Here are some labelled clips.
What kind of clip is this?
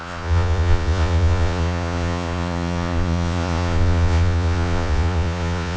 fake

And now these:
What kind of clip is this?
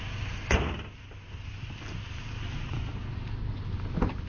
real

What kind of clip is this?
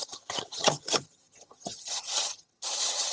fake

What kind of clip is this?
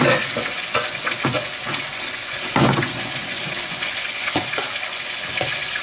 fake